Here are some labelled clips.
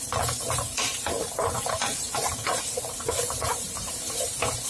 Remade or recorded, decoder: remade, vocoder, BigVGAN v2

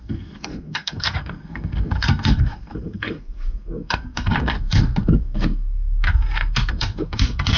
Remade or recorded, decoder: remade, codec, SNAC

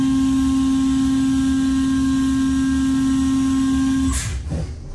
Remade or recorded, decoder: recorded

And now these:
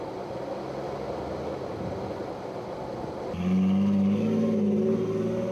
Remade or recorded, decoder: recorded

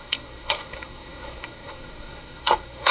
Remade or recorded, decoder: remade, codec, SNAC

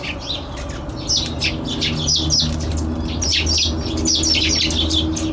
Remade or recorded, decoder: recorded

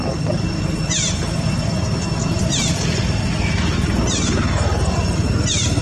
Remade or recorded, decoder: recorded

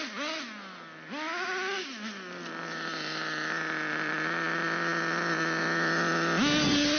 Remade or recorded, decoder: recorded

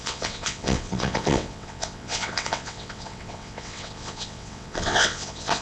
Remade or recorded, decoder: remade, vocoder, WaveNeXt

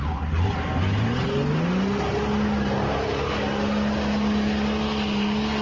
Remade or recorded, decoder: recorded